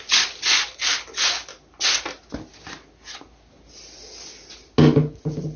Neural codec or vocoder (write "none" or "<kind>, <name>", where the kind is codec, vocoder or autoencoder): none